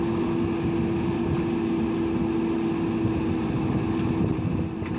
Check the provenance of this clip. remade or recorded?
recorded